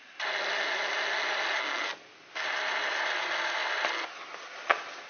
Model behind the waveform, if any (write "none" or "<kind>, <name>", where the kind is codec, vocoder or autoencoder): none